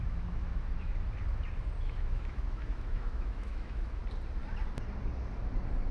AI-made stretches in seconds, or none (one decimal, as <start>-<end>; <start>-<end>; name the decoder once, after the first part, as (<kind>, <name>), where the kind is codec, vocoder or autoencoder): 0.0-0.9 (autoencoder, DAC-VAE); 1.8-4.0